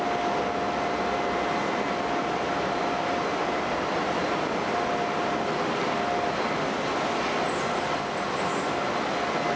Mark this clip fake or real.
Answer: real